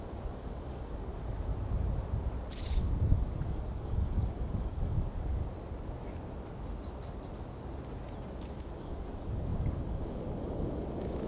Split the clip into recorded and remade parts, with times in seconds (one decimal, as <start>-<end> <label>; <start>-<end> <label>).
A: 0.0-1.5 remade; 1.5-2.5 recorded; 2.5-5.4 remade; 5.4-8.5 recorded; 8.5-11.3 remade